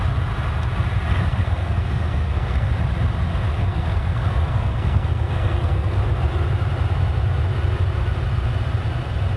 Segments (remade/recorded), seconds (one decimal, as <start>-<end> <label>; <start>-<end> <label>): 0.0-1.1 recorded; 1.1-2.7 remade; 2.7-3.5 recorded; 3.5-6.0 remade; 6.0-9.4 recorded